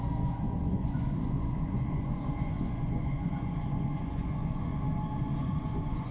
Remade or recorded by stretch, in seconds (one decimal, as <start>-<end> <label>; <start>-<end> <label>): 0.0-4.7 remade; 4.7-5.4 recorded; 5.4-6.1 remade